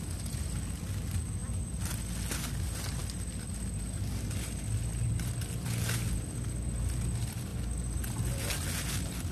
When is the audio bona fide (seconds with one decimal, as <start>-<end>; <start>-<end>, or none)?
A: 0.0-9.3